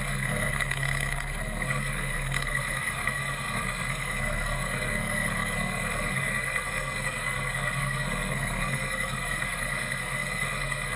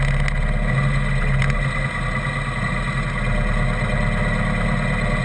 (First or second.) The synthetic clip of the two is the first